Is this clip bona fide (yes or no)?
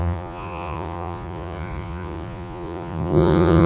no